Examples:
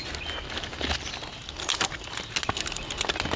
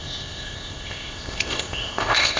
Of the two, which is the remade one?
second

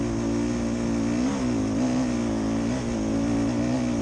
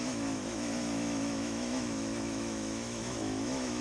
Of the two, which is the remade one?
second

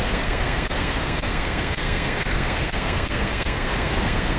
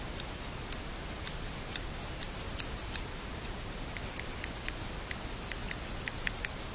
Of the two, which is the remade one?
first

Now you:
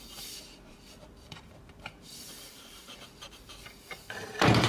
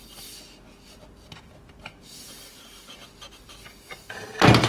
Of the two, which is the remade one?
first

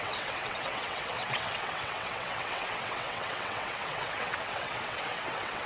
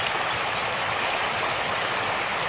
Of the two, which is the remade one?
first